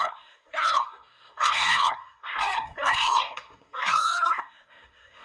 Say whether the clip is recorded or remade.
remade